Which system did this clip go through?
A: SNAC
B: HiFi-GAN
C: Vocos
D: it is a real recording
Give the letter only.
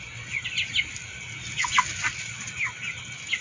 D